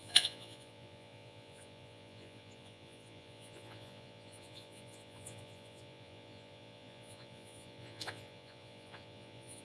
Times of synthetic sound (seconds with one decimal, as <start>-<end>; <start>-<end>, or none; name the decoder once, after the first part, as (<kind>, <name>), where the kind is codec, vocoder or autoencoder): 0.0-9.6 (vocoder, Vocos)